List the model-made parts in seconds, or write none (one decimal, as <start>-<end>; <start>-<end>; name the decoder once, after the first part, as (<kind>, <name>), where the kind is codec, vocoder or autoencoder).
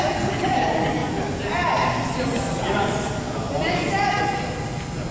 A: none